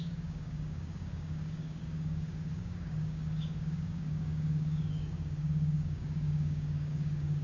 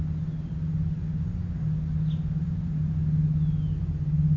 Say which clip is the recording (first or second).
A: second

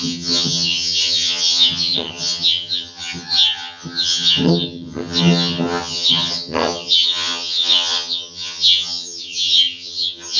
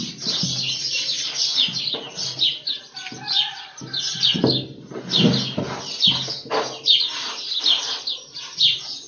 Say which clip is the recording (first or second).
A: second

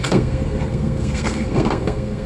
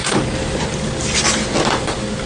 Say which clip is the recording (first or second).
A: second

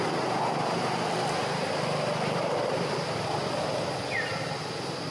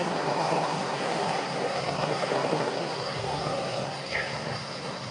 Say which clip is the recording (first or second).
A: first